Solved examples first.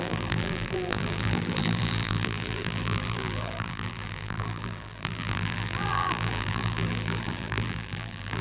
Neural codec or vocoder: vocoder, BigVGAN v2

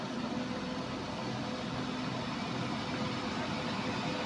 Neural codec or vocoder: none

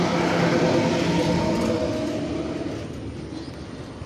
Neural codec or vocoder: none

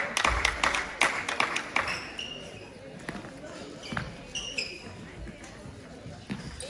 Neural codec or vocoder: none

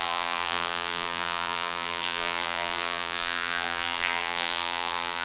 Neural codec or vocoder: vocoder, BigVGAN v2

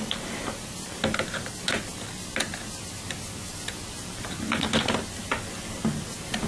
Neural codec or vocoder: none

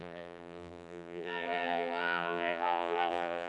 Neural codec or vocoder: vocoder, BigVGAN v2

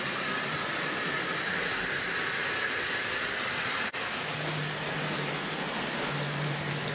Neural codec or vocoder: none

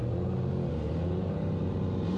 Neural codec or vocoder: none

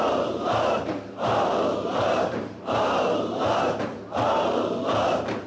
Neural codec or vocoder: vocoder, BigVGAN v2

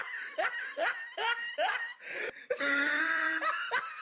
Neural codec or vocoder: vocoder, BigVGAN v2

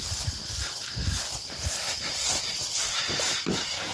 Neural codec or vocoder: vocoder, BigVGAN v2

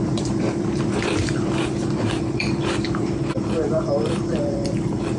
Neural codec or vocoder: vocoder, BigVGAN v2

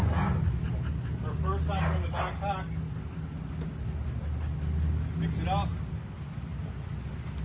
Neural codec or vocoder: none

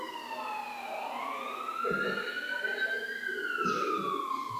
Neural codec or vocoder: none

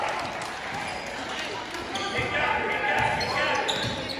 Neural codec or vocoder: none